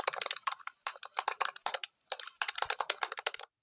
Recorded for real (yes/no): yes